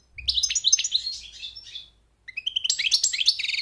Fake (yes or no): no